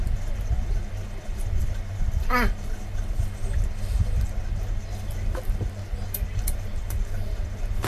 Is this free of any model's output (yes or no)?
no